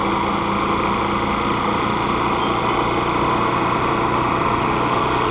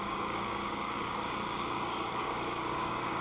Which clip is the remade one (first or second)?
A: second